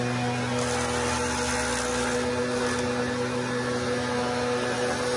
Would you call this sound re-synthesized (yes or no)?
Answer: no